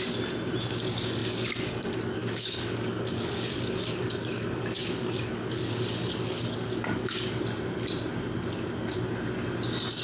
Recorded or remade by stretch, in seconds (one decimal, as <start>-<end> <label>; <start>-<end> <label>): 0.0-2.2 recorded; 2.2-7.4 remade; 7.4-10.0 recorded